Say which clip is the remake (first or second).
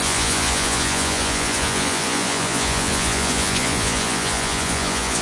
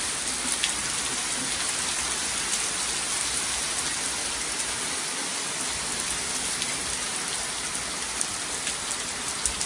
first